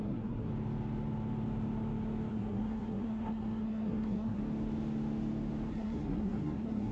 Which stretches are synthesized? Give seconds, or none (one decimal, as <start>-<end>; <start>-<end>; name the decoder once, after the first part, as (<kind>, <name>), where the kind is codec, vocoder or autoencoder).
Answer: 0.0-0.5 (codec, SNAC); 2.3-4.4; 5.7-6.9

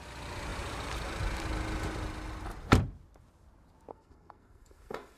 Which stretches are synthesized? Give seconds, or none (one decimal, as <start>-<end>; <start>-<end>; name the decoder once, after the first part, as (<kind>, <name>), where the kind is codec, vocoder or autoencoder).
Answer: 3.9-5.2 (codec, SNAC)